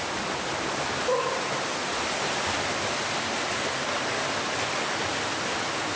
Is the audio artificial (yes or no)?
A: no